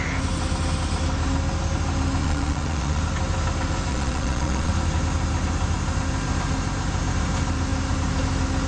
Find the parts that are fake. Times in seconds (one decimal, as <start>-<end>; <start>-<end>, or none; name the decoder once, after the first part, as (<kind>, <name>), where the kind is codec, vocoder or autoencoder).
2.2-3.0 (vocoder, Vocos); 3.9-4.7

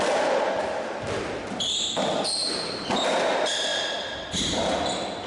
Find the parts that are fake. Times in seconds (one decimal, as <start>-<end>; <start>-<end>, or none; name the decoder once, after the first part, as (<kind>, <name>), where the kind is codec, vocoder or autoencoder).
none

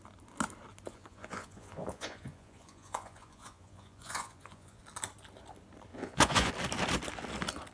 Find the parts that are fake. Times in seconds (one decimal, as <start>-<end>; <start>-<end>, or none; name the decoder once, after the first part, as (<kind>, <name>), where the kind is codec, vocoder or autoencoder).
0.9-4.8 (vocoder, Vocos); 5.9-6.5

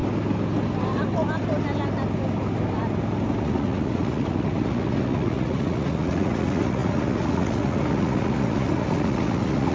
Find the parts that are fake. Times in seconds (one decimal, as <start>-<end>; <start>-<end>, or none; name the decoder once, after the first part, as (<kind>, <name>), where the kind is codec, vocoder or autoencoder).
3.4-9.7 (vocoder, Vocos)

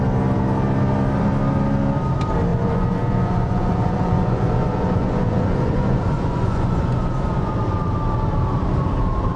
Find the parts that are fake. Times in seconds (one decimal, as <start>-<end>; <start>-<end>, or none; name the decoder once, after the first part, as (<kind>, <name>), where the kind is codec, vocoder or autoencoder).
2.5-7.5 (vocoder, Vocos)

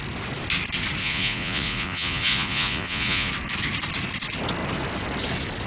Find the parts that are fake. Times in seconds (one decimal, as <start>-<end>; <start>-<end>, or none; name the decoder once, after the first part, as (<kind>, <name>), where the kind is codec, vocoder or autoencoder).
1.0-3.3 (vocoder, Vocos)